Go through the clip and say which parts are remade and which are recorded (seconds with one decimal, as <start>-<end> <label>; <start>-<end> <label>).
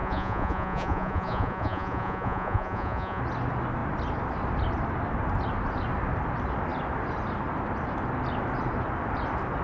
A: 0.0-3.2 remade; 3.2-9.6 recorded